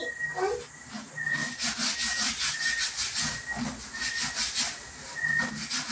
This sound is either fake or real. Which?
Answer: real